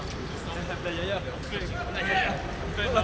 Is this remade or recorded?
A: recorded